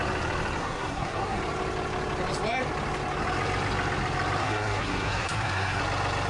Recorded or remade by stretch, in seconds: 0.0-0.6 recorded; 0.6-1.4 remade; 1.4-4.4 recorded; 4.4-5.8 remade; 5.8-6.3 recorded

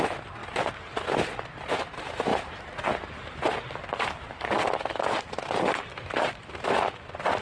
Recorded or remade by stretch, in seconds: 0.0-7.4 recorded

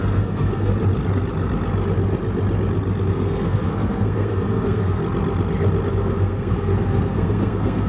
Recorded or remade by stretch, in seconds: 0.0-0.7 remade; 0.7-3.1 recorded; 3.1-5.0 remade; 5.0-5.9 recorded; 5.9-7.9 remade

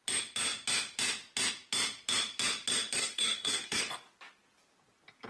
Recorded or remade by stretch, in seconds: 0.0-3.0 recorded; 3.0-3.8 remade; 3.8-5.3 recorded

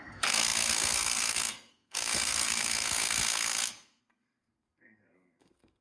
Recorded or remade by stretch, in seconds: 0.0-5.8 remade

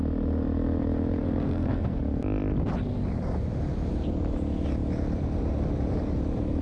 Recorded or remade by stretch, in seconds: 0.0-1.2 recorded; 1.2-2.0 remade; 2.0-6.6 recorded